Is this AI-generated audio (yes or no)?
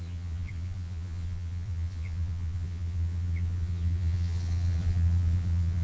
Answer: yes